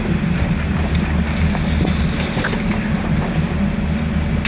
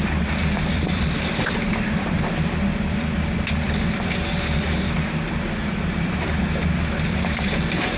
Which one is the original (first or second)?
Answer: first